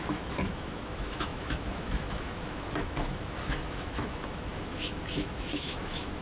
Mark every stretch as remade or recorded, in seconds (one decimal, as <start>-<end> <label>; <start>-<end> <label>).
0.0-6.2 remade